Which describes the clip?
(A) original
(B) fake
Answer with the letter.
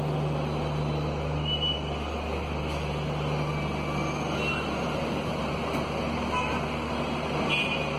A